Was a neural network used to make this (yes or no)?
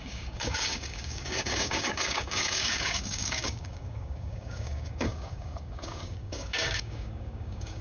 yes